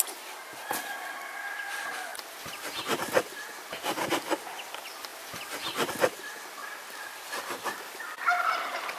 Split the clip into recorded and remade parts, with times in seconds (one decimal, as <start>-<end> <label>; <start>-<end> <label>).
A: 0.0-2.1 recorded; 2.1-2.8 remade; 2.8-5.1 recorded; 5.1-5.9 remade; 5.9-9.0 recorded